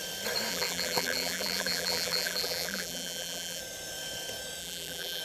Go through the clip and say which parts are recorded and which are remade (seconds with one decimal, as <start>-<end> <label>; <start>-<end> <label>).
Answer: 0.0-0.5 recorded; 0.5-3.6 remade; 3.6-4.6 recorded; 4.6-5.2 remade